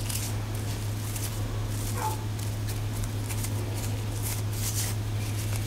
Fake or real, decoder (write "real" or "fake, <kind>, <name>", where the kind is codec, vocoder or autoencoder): real